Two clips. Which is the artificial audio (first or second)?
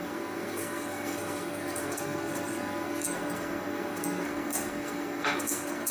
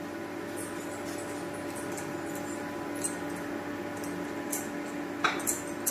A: first